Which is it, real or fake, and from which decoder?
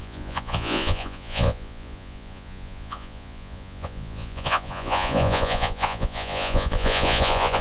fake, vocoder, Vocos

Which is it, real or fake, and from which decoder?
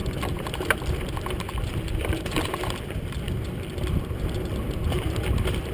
fake, vocoder, BigVGAN v2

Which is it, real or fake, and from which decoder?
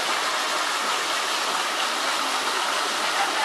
real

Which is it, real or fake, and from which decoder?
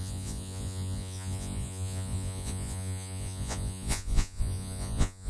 fake, vocoder, Vocos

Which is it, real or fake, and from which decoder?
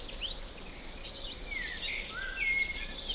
real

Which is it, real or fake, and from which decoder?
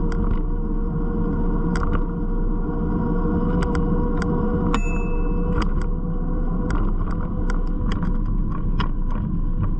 real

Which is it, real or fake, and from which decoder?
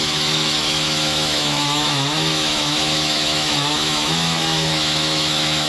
fake, autoencoder, DAC-VAE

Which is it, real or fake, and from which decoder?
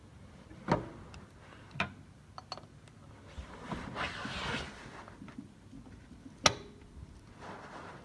real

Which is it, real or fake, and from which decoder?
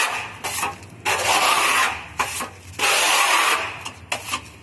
real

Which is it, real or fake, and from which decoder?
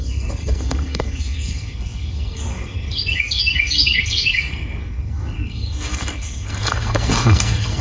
fake, codec, SNAC